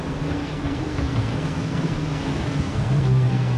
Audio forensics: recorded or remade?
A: remade